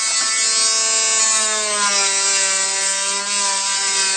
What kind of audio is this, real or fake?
real